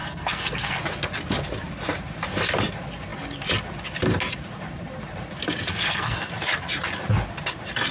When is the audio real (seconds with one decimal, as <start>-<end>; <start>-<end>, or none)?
0.8-5.7; 6.3-7.9